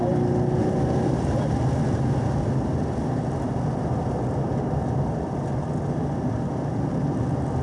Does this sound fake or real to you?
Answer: real